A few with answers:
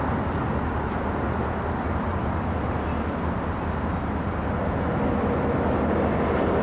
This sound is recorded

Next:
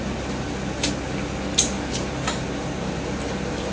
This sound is recorded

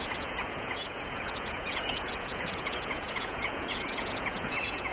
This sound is remade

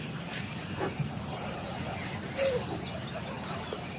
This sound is recorded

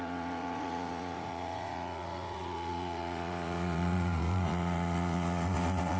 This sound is remade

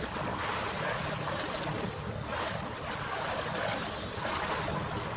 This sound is recorded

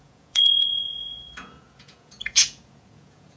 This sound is remade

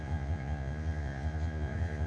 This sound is remade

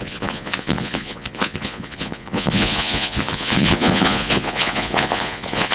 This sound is remade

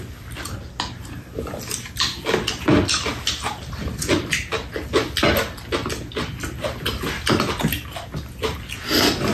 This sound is recorded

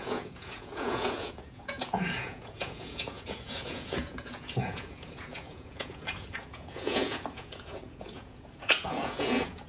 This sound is remade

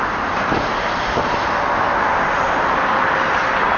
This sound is recorded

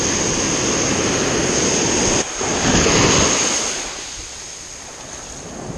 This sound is recorded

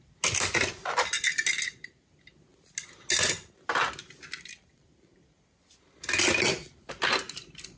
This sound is recorded